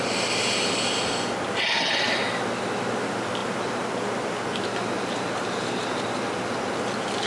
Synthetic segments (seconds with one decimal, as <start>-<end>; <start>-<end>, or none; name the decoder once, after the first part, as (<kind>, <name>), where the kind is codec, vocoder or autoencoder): none